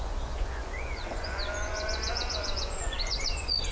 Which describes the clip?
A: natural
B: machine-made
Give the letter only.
B